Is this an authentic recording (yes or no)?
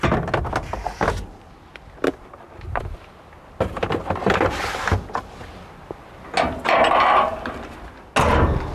yes